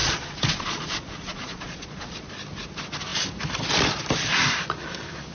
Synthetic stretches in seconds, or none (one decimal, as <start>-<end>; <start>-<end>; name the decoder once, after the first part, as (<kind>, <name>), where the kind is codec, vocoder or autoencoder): 0.0-2.3 (vocoder, Vocos)

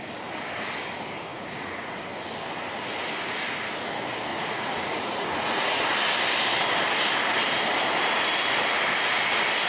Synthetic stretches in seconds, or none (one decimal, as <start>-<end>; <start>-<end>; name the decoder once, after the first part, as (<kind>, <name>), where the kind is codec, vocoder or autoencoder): 1.3-2.1 (vocoder, Vocos); 4.3-5.9

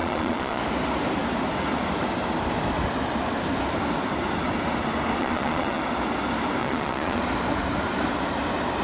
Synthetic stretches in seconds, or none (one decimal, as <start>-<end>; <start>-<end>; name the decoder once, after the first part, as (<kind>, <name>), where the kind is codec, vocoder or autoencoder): 0.0-0.6 (vocoder, Vocos); 5.2-5.8; 6.6-7.2